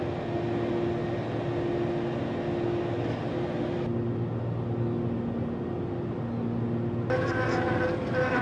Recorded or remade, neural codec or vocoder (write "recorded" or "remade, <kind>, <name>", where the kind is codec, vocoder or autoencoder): recorded